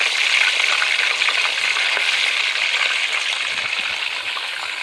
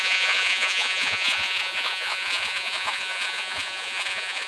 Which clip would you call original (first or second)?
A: first